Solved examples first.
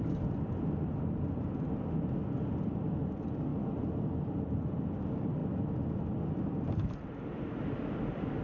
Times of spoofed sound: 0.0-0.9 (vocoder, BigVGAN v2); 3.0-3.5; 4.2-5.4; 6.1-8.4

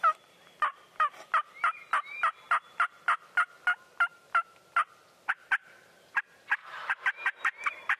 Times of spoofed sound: 6.6-8.0 (vocoder, BigVGAN v2)

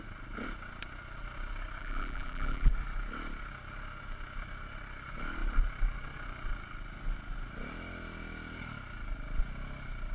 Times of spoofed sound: 1.8-2.7 (vocoder, BigVGAN v2)

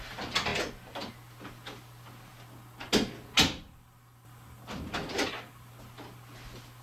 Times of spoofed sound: none

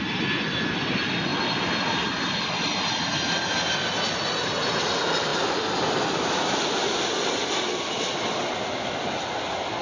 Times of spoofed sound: 1.3-2.1 (vocoder, BigVGAN v2); 5.3-7.1

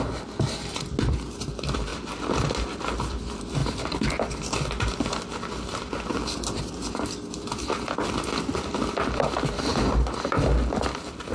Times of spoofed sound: none

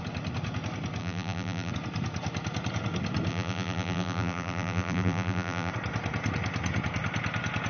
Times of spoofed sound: 1.0-1.7 (vocoder, BigVGAN v2); 3.3-5.7